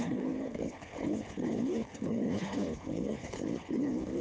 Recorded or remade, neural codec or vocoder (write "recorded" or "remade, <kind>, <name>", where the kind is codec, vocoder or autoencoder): remade, codec, HILCodec